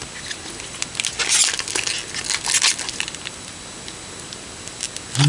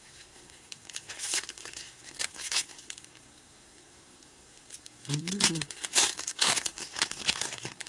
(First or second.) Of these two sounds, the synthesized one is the second